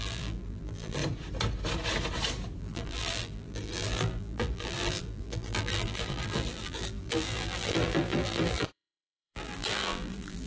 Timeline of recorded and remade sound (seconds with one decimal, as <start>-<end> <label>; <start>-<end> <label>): 0.0-1.0 remade; 1.0-2.6 recorded; 2.6-10.5 remade